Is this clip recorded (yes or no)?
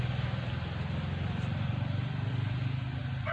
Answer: yes